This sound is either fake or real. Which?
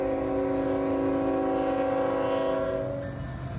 real